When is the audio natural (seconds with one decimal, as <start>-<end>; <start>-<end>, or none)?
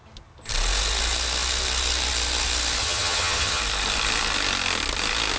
0.0-2.8; 3.6-5.4